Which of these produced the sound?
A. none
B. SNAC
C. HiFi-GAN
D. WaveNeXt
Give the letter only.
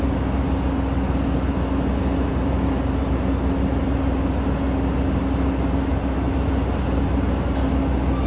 A